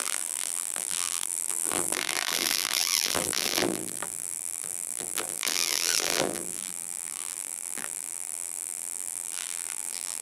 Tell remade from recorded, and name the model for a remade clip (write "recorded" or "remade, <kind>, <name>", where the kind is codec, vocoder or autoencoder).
remade, vocoder, BigVGAN v2